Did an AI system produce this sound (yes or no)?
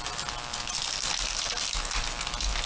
no